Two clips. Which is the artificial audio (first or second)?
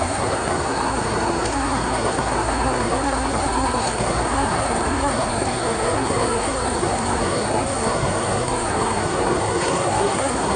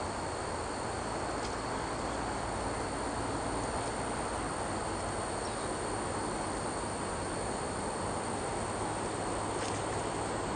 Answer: first